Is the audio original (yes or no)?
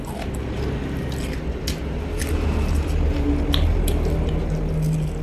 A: yes